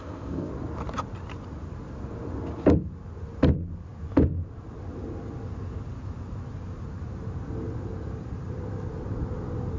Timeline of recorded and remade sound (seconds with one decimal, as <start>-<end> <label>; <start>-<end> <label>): 0.0-0.5 remade; 0.5-9.8 recorded